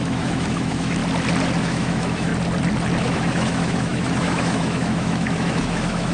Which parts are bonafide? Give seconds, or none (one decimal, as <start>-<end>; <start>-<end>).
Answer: 1.0-1.6; 2.3-3.0